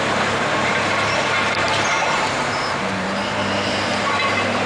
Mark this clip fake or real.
fake